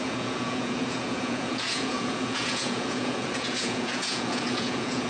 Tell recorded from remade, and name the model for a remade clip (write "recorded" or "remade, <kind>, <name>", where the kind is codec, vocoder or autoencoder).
remade, vocoder, Vocos